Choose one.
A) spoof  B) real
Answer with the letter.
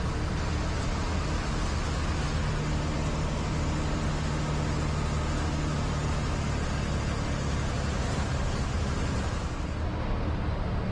B